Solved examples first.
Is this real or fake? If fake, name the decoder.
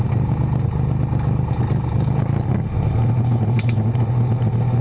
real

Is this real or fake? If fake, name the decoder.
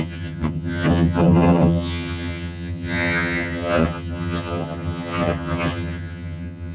fake, vocoder, HiFi-GAN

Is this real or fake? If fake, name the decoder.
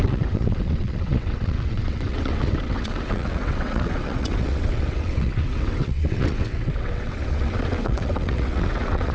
fake, vocoder, WaveNeXt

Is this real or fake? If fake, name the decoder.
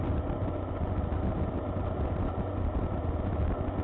real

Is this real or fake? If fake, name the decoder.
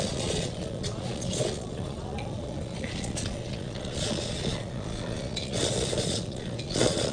fake, vocoder, Vocos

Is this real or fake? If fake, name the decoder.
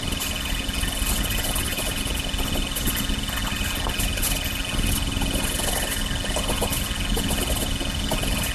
real